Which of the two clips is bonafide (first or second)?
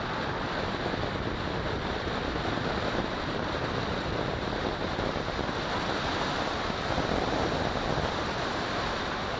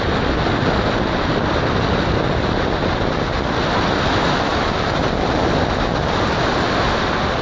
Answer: second